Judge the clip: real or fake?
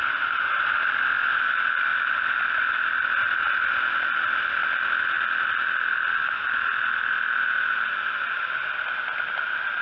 real